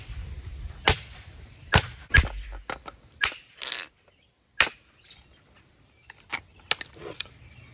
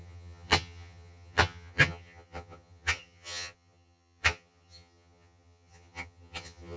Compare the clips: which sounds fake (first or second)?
second